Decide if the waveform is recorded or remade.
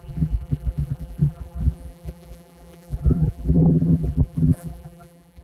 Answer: remade